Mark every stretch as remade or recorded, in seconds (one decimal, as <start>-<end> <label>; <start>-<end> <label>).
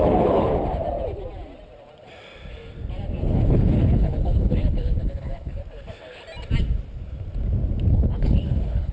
0.0-0.5 remade; 0.5-3.2 recorded; 3.2-5.6 remade; 5.6-7.9 recorded; 7.9-8.9 remade